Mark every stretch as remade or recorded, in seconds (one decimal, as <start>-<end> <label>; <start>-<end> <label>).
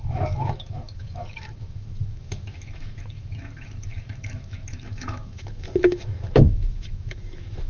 0.0-7.7 remade